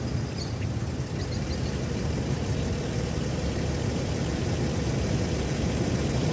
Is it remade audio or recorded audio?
recorded